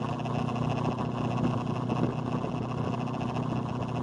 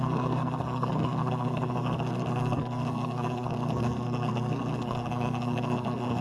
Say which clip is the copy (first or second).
second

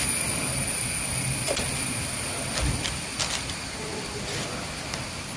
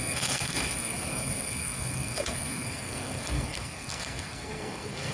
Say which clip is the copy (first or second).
second